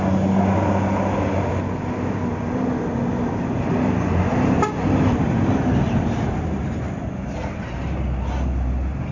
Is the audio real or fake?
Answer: real